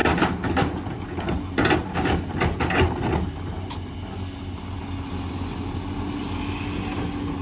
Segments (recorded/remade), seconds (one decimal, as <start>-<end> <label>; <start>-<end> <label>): 0.0-7.4 recorded